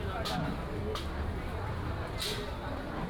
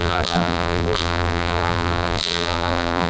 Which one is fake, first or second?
second